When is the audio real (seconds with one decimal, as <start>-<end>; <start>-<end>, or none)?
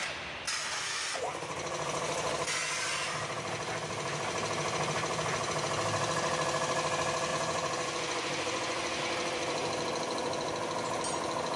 0.0-7.3; 9.0-11.6